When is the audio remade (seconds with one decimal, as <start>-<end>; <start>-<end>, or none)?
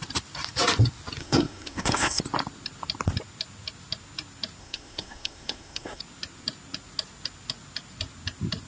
1.2-2.2; 4.6-6.0